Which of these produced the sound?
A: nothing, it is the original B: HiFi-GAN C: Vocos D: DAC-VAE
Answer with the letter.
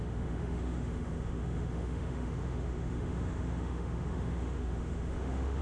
D